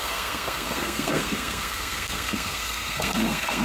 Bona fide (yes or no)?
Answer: no